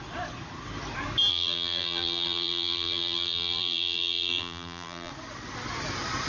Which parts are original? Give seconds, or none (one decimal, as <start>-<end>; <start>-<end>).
0.0-1.3; 5.1-6.3